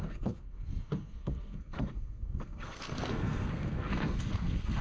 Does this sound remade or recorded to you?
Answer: remade